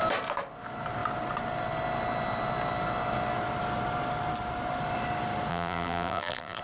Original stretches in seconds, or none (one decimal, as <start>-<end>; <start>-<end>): 0.0-5.5